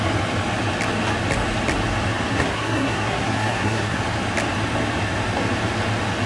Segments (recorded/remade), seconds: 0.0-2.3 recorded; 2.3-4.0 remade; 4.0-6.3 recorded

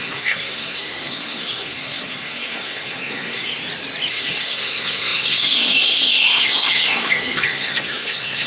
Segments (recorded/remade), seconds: 0.0-3.5 remade; 3.5-4.1 recorded; 4.1-8.5 remade

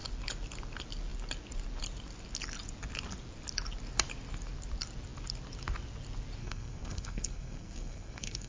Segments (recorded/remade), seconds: 0.0-6.4 recorded; 6.4-8.5 remade

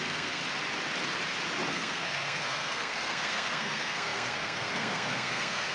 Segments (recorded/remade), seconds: 0.0-0.4 remade; 0.4-1.7 recorded; 1.7-5.7 remade

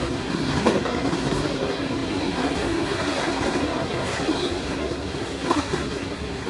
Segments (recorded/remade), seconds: 0.0-6.5 remade

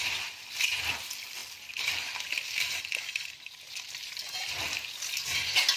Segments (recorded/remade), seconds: 0.0-5.8 recorded